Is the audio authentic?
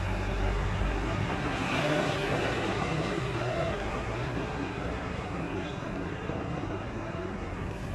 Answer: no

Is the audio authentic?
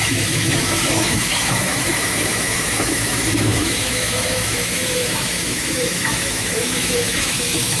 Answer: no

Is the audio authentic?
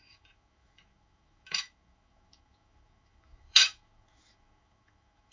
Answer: no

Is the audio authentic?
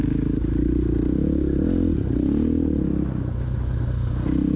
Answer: yes